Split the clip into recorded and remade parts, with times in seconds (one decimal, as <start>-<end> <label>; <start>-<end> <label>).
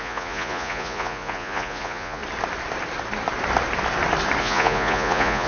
0.0-2.2 remade; 2.2-4.4 recorded; 4.4-5.5 remade